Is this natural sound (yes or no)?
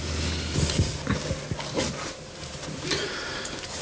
yes